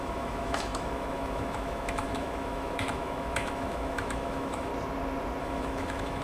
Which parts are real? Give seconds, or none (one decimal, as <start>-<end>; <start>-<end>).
4.7-5.4